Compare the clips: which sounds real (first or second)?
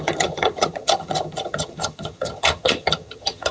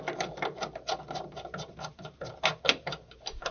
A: second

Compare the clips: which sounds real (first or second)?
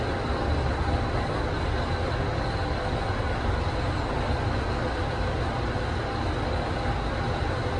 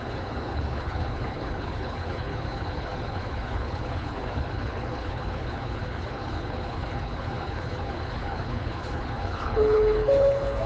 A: first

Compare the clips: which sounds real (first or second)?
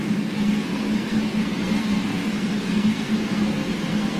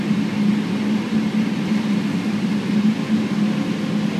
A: second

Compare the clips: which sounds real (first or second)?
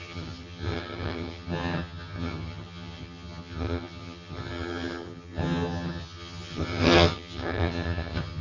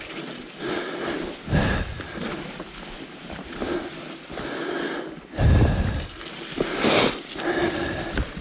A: second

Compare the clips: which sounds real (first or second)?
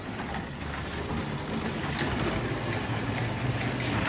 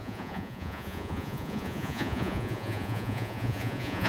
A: first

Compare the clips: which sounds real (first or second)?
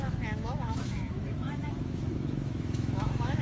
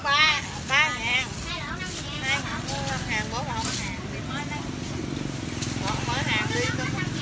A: second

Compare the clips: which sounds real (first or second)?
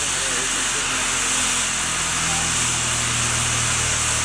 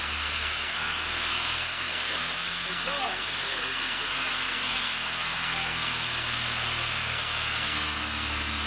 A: first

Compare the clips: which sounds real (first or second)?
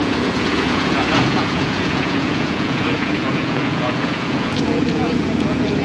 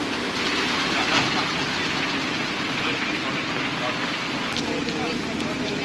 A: second